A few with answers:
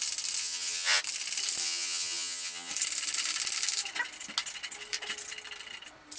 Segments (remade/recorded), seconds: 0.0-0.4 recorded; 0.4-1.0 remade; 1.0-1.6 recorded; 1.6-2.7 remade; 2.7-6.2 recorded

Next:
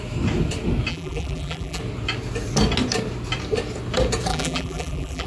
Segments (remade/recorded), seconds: 0.0-0.9 recorded; 0.9-1.8 remade; 1.8-4.3 recorded; 4.3-5.3 remade

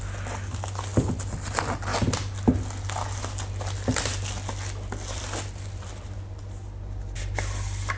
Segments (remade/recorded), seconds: 0.0-8.0 recorded

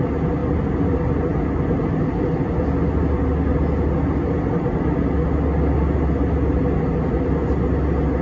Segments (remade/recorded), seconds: 0.0-8.2 recorded

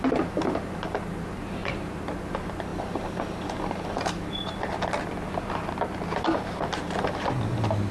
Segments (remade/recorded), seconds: 0.0-1.6 recorded; 1.6-2.3 remade; 2.3-2.7 recorded; 2.7-4.3 remade; 4.3-7.9 recorded

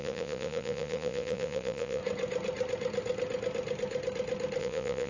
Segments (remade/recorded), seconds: 0.0-2.0 remade; 2.0-4.6 recorded; 4.6-5.1 remade